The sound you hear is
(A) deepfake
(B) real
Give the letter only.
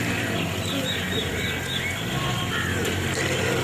B